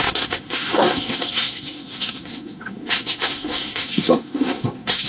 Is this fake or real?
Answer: fake